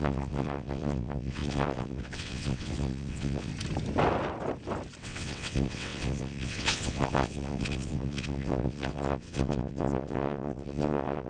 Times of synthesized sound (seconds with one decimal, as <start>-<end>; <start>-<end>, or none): 0.0-3.5; 5.0-11.3